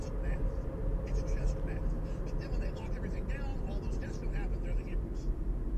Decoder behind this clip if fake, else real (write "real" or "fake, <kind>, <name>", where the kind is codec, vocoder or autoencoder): real